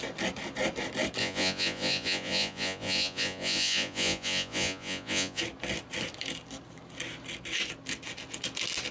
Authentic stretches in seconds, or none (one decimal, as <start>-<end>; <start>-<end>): 0.0-1.2; 5.4-8.9